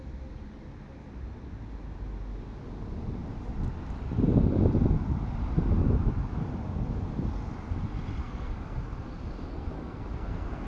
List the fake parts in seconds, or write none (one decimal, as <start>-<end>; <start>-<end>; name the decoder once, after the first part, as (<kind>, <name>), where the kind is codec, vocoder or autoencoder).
8.2-8.8 (codec, SNAC); 9.5-10.7